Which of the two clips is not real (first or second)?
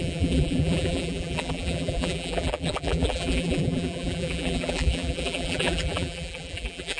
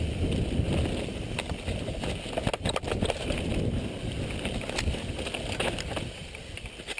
first